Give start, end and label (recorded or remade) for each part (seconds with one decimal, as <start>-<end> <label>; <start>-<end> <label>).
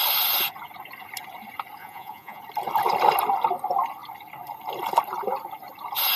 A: 0.0-1.8 recorded; 1.8-2.4 remade; 2.4-6.2 recorded